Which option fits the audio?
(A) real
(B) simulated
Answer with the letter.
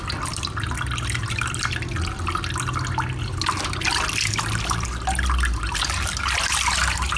A